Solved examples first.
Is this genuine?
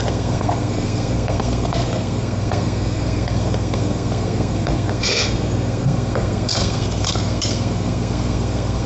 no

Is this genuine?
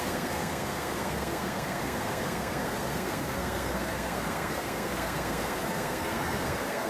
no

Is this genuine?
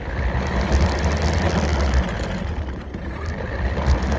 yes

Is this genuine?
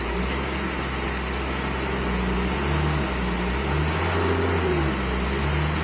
yes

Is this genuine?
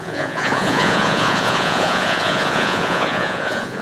no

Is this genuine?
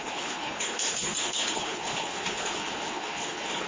no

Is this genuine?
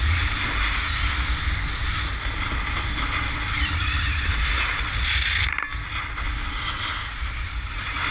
yes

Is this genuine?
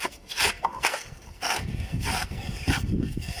no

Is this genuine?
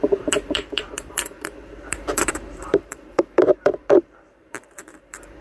no